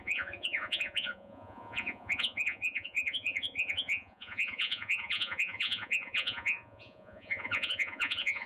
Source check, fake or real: fake